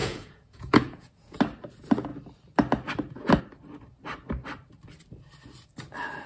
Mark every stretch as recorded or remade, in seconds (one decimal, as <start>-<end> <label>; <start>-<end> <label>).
0.0-1.4 remade; 1.4-6.3 recorded